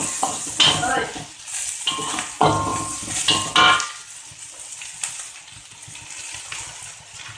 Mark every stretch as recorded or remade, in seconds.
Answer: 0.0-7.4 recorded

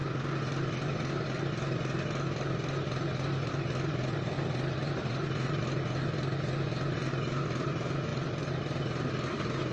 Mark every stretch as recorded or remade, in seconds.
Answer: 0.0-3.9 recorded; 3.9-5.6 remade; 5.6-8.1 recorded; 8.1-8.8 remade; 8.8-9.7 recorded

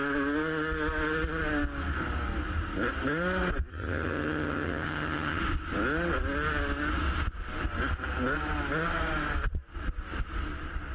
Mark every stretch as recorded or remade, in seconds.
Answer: 0.0-3.7 recorded; 3.7-5.4 remade; 5.4-10.9 recorded

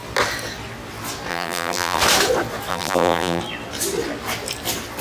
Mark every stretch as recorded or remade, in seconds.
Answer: 0.0-1.3 recorded; 1.3-2.0 remade; 2.0-2.7 recorded; 2.7-3.4 remade; 3.4-5.0 recorded